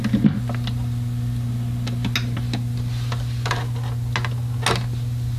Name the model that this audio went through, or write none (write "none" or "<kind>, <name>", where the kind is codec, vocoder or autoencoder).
none